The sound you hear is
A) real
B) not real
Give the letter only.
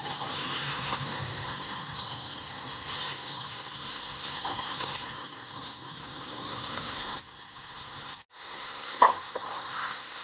B